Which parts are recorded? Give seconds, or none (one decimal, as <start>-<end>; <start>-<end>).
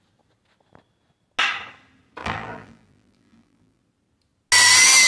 0.0-2.2; 3.8-5.1